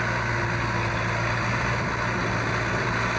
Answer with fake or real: real